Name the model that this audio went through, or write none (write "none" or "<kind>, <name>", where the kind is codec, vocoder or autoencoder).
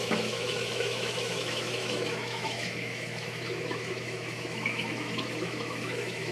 autoencoder, DAC-VAE